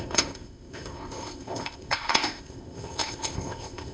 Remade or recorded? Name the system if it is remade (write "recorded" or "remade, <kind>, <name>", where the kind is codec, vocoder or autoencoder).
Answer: remade, codec, ZipCodec